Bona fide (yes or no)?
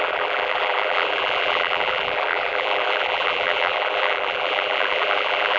no